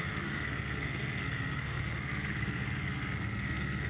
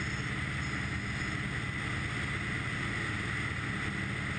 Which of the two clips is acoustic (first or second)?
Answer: second